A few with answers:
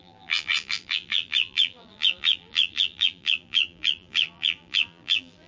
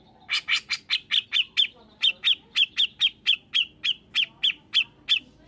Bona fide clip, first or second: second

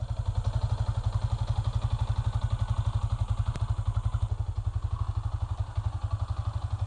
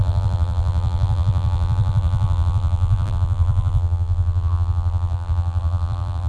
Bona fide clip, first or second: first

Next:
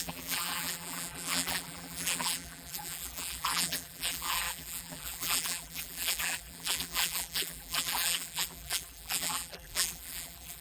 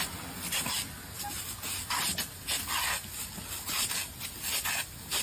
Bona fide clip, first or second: second